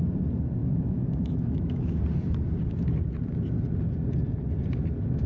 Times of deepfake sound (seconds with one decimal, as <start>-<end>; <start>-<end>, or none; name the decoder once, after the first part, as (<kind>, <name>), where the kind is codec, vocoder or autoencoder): 0.6-2.0 (autoencoder, DAC-VAE)